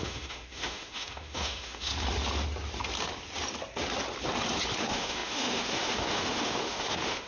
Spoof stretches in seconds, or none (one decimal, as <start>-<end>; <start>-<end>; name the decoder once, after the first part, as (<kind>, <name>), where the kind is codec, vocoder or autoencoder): 0.0-1.9 (autoencoder, DAC-VAE); 4.8-7.3